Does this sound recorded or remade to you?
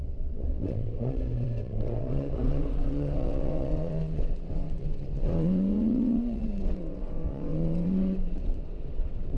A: remade